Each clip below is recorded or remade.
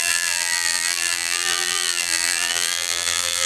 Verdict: remade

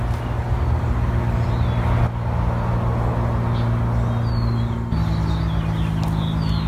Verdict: recorded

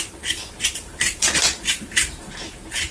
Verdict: remade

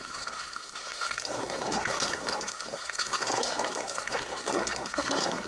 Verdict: remade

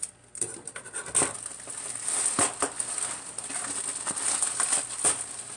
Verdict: recorded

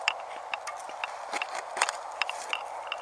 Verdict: recorded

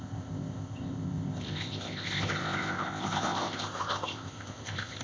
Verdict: remade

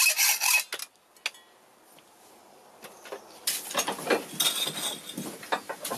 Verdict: recorded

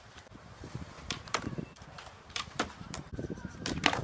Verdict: remade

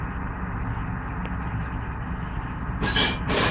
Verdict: recorded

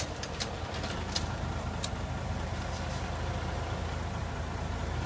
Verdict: recorded